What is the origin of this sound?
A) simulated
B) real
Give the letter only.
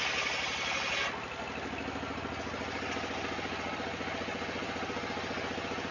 B